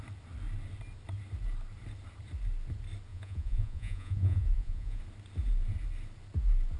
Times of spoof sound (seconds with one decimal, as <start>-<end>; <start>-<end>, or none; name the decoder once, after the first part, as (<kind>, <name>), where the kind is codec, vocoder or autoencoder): 3.1-5.0 (vocoder, Vocos)